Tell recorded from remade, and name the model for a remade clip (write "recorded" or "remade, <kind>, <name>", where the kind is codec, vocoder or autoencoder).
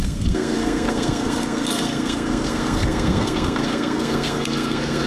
remade, codec, SNAC